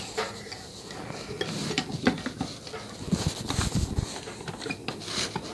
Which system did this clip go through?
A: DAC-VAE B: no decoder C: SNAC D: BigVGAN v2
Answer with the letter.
B